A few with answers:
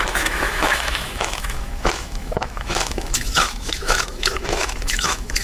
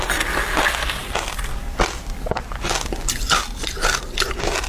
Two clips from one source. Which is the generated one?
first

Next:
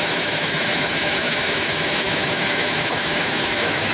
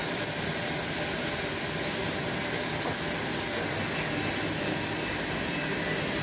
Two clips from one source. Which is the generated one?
first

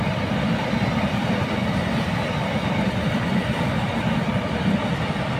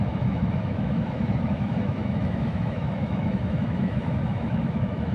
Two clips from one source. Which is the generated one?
second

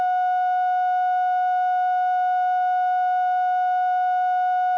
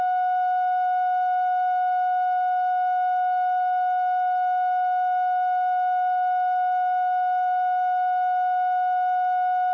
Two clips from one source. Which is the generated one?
second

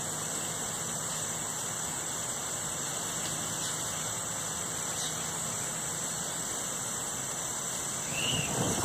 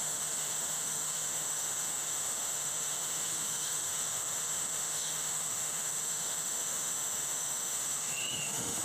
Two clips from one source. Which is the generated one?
second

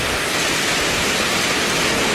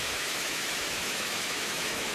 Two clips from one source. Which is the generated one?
second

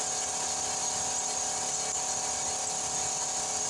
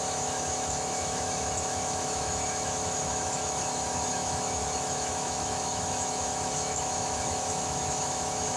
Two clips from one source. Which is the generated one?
second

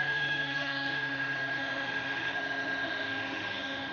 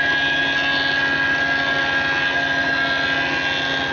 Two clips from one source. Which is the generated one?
first